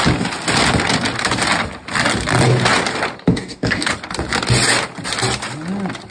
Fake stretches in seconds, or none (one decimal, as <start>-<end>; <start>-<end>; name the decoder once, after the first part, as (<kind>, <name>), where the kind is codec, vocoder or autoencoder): 3.3-3.9 (codec, DAC)